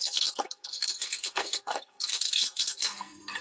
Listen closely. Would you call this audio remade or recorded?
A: remade